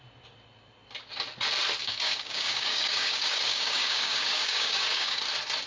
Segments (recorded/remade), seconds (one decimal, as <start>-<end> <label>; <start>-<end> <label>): 0.0-1.8 recorded; 1.8-5.2 remade; 5.2-5.7 recorded